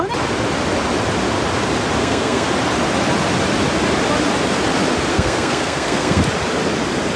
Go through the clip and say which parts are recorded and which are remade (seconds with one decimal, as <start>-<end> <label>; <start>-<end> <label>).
0.0-2.0 recorded; 2.0-2.5 remade; 2.5-5.1 recorded; 5.1-6.2 remade; 6.2-7.2 recorded